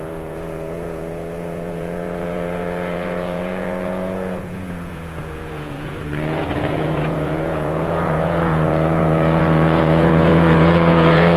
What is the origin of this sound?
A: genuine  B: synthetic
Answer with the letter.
B